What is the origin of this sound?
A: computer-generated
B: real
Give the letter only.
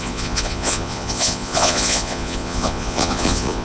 A